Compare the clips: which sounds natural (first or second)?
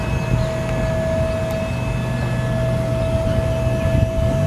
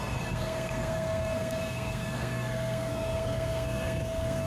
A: first